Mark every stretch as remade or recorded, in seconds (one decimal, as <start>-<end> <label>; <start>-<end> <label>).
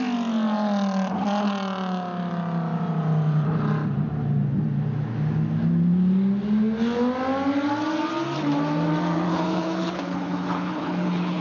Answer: 0.0-9.3 recorded; 9.3-11.4 remade